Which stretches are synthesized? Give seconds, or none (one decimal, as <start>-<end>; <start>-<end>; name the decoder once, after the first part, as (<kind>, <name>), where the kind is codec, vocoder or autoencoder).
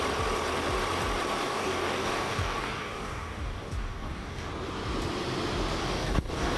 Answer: 1.4-4.5 (codec, DAC); 5.8-6.6